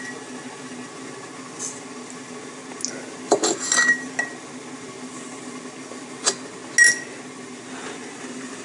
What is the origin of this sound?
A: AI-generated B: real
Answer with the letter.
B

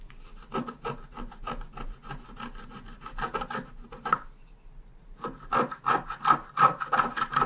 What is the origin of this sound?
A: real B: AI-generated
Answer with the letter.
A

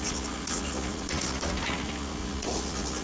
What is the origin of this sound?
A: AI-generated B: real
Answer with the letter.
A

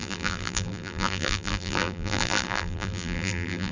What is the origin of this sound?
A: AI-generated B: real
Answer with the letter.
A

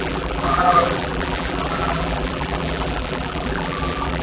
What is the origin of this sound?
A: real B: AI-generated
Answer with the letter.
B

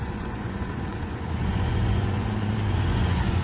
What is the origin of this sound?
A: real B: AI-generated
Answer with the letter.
B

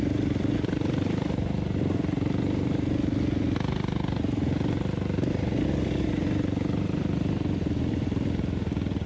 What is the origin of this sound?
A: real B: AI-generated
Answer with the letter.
A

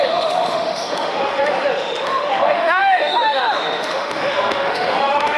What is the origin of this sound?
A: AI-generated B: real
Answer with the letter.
A